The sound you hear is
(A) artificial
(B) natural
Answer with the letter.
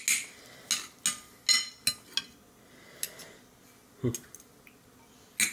B